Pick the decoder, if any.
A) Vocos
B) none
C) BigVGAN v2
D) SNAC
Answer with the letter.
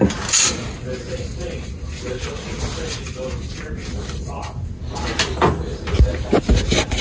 B